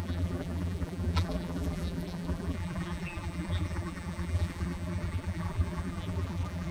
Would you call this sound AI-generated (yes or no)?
yes